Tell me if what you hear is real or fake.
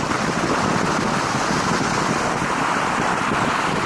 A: real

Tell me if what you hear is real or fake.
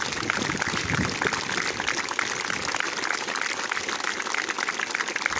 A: real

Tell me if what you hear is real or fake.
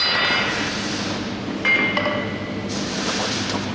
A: real